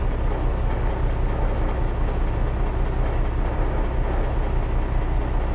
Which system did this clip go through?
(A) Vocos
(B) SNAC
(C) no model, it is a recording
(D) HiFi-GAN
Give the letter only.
C